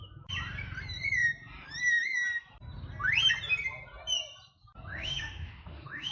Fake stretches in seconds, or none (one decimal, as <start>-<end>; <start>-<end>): 4.9-6.1